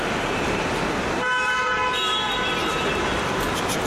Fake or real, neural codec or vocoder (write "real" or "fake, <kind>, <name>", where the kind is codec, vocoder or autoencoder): fake, vocoder, BigVGAN v2